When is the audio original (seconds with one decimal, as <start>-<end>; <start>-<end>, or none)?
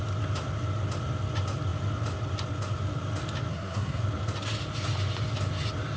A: 0.0-3.5; 4.0-6.0